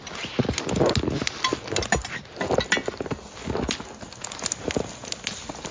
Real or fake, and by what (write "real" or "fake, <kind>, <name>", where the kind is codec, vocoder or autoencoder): real